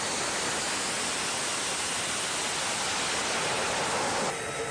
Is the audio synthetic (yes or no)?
no